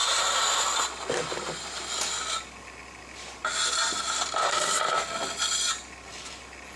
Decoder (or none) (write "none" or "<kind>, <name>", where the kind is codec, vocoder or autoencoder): none